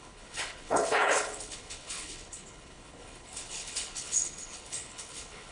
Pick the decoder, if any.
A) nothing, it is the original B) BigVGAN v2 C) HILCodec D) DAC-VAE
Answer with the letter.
C